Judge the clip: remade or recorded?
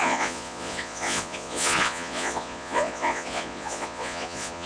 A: remade